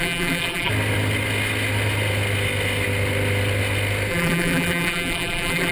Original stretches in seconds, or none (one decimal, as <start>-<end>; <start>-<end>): 0.7-4.1